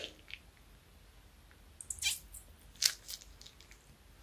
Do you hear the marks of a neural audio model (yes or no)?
no